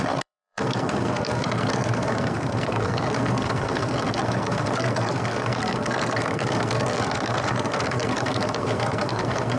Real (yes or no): no